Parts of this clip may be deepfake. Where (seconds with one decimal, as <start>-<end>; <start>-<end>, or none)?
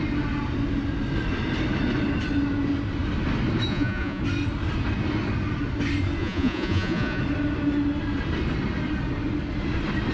3.7-4.2; 6.2-7.2